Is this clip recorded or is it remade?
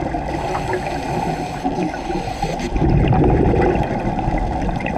recorded